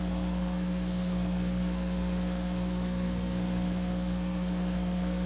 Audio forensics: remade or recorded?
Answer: remade